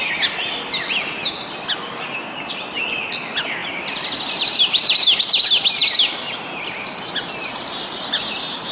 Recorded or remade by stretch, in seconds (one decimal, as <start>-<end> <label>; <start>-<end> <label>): 0.0-3.6 recorded; 3.6-5.2 remade; 5.2-5.8 recorded; 5.8-7.1 remade; 7.1-8.7 recorded